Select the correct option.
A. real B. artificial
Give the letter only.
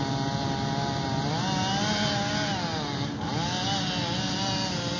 A